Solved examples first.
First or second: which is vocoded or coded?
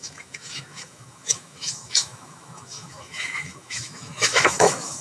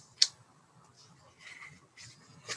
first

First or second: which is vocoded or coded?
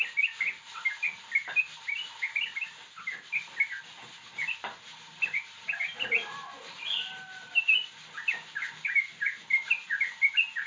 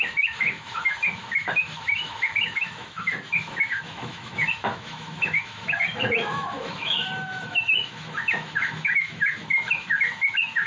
second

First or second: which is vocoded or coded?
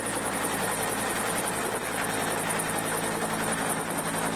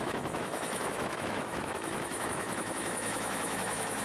second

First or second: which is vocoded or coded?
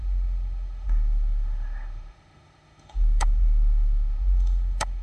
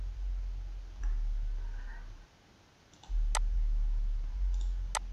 first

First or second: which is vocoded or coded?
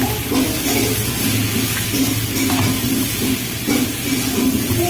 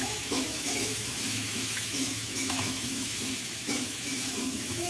second